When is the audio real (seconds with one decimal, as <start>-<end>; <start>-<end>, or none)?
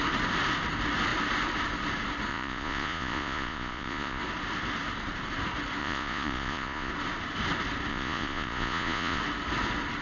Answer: 0.0-2.3; 4.2-5.8; 6.9-7.9; 9.2-10.0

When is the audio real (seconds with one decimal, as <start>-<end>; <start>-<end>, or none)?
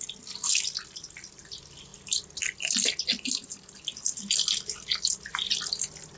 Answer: 0.0-6.2